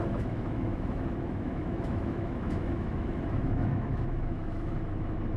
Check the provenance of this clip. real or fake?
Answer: fake